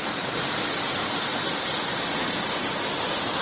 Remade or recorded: recorded